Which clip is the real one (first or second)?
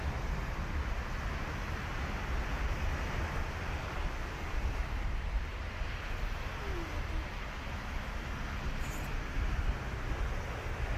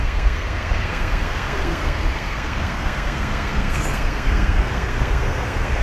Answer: first